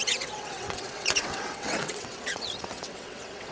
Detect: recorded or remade remade